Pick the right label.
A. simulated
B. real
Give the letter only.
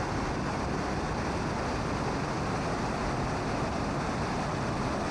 B